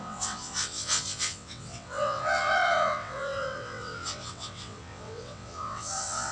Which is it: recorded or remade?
remade